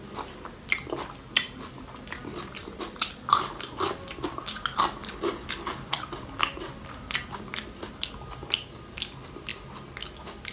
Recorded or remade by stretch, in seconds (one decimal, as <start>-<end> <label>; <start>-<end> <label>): 0.0-2.6 recorded; 2.6-3.1 remade; 3.1-5.0 recorded; 5.0-7.9 remade; 7.9-10.5 recorded